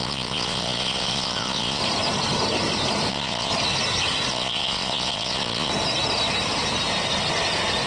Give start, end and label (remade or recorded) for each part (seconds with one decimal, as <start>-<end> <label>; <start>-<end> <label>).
0.0-1.8 remade; 1.8-3.1 recorded; 3.1-3.5 remade; 3.5-4.3 recorded; 4.3-5.7 remade; 5.7-7.9 recorded